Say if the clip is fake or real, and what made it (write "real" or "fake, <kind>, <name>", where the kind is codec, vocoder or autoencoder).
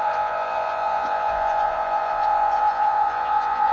fake, vocoder, Vocos